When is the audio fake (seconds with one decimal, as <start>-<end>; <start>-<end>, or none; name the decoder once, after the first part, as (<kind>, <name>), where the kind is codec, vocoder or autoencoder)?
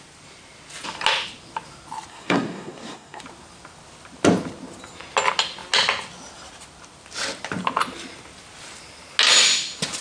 2.1-3.2 (codec, SNAC)